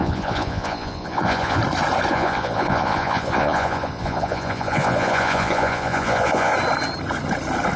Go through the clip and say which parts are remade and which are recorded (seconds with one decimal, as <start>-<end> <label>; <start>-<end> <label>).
0.0-1.6 remade; 1.6-2.1 recorded; 2.1-6.5 remade; 6.5-7.8 recorded